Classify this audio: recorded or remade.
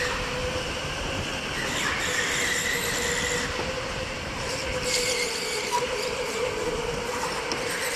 recorded